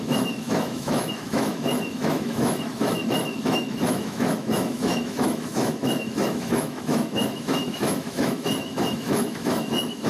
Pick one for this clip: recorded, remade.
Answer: remade